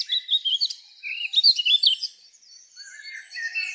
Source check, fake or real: fake